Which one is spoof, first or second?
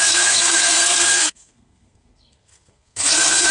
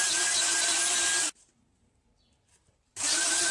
first